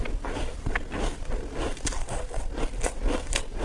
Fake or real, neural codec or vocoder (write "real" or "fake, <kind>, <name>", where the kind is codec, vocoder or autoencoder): real